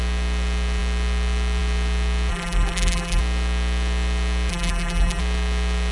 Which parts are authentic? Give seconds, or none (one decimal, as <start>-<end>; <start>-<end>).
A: 0.0-2.3; 3.2-4.5; 5.2-5.9